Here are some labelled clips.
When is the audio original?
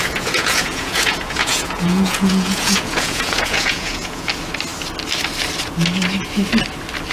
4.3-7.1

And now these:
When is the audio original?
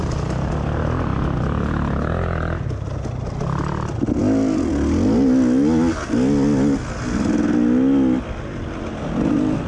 0.0-9.7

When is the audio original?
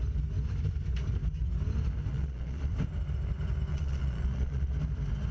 0.0-2.1; 2.7-3.7; 4.7-5.3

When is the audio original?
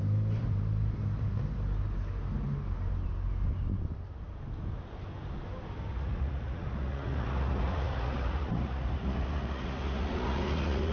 0.0-5.9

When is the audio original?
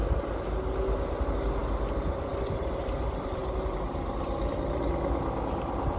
0.0-6.0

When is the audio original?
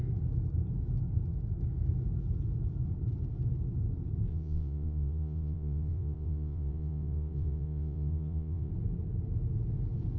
0.0-4.3; 8.7-10.2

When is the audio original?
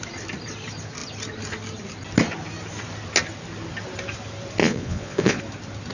0.0-4.6; 5.4-5.9